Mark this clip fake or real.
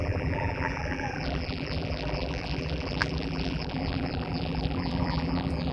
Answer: fake